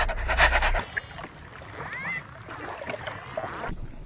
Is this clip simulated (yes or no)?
no